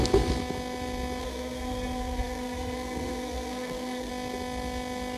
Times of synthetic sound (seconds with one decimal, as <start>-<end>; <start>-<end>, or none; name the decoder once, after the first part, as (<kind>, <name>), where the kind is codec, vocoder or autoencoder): 1.2-4.1 (codec, SNAC)